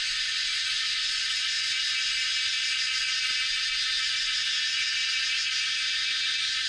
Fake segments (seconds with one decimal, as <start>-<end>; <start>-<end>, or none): 0.0-2.0; 5.6-6.7